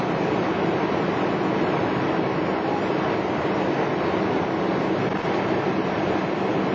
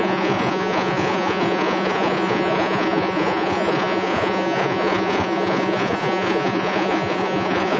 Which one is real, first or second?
first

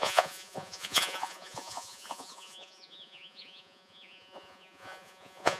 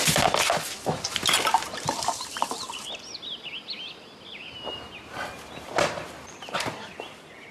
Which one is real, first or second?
second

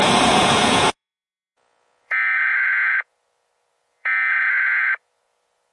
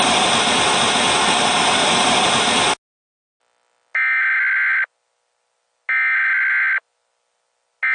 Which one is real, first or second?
second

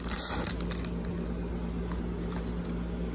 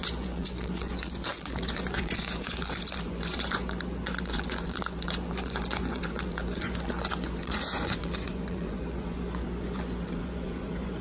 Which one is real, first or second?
first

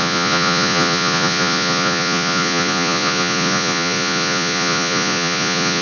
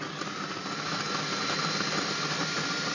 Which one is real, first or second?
second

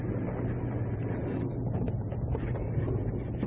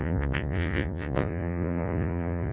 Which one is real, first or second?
first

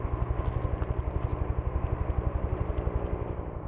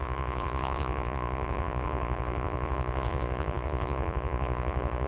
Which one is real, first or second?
first